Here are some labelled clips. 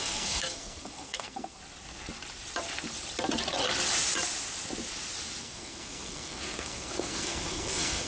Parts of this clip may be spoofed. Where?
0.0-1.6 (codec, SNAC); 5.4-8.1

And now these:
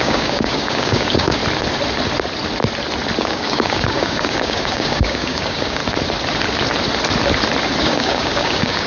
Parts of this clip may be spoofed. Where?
0.0-1.4 (codec, DAC); 3.2-5.8; 7.8-8.9

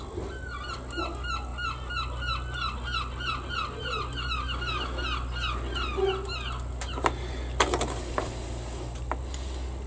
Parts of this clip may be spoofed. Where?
none

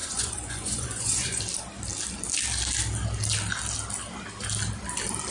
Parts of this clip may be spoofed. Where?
0.0-1.4 (vocoder, Vocos)